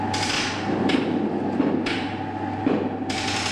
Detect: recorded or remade recorded